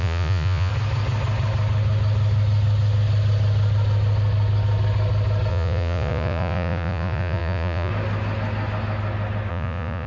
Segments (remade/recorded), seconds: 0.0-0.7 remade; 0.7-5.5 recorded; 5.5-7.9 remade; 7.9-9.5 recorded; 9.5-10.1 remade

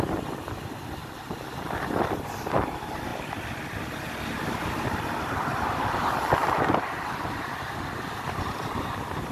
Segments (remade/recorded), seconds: 0.0-6.4 recorded; 6.4-7.4 remade; 7.4-9.3 recorded

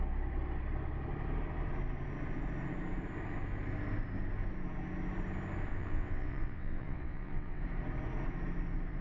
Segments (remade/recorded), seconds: 0.0-5.7 recorded; 5.7-7.6 remade; 7.6-9.0 recorded

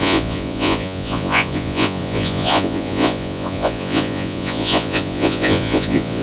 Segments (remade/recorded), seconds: 0.0-6.2 remade

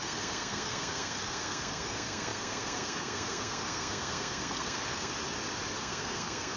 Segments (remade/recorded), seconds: 0.0-5.1 remade; 5.1-5.8 recorded; 5.8-6.6 remade